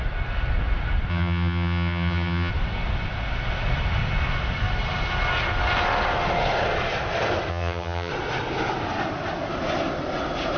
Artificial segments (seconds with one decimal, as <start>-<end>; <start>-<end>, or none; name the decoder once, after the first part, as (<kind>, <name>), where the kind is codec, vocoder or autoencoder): 1.1-2.5 (vocoder, HiFi-GAN); 7.5-8.1